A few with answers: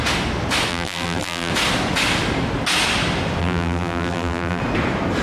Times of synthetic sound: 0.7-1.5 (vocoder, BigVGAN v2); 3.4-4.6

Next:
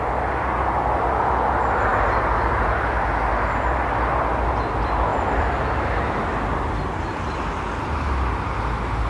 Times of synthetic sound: 5.1-6.0 (vocoder, BigVGAN v2)